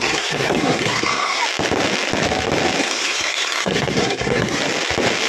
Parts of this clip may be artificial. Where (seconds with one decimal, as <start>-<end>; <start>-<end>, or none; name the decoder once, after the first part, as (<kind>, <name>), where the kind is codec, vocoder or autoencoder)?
0.0-1.4 (codec, SNAC); 2.8-4.6